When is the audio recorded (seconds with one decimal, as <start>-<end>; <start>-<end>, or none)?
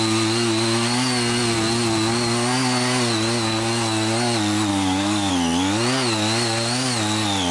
0.0-4.7; 5.3-7.5